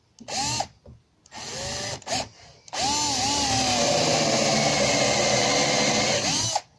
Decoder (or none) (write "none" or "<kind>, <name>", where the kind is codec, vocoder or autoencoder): none